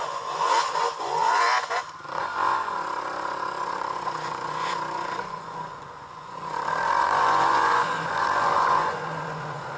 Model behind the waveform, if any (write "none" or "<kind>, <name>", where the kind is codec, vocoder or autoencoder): vocoder, Vocos